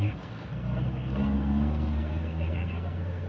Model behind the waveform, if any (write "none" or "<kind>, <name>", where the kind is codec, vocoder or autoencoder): codec, SNAC